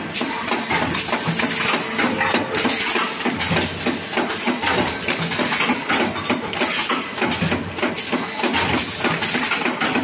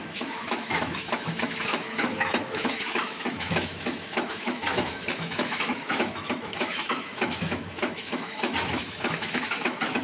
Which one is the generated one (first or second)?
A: second